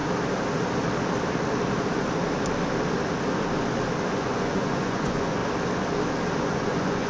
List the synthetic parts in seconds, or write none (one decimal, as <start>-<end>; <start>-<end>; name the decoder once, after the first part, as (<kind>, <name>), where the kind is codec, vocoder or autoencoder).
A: 4.1-5.4 (vocoder, Vocos); 6.4-7.1